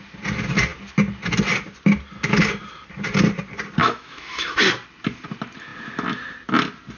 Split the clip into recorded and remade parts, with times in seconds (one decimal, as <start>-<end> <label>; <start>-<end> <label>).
0.0-3.8 recorded; 3.8-4.6 remade; 4.6-7.0 recorded